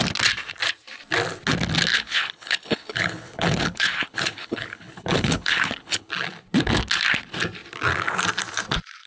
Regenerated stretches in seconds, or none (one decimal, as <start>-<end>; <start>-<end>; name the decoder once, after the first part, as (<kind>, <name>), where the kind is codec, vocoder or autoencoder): 1.9-6.1 (codec, HILCodec)